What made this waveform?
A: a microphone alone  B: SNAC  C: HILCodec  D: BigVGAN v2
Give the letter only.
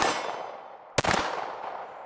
A